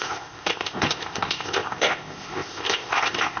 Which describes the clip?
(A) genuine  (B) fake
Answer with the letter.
B